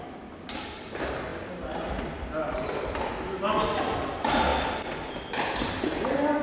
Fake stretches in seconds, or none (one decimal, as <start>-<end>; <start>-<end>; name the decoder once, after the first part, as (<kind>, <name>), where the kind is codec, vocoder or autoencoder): none